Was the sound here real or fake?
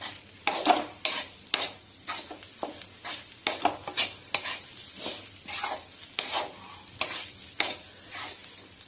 real